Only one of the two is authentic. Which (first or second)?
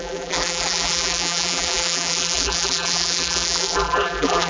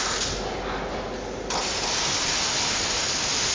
second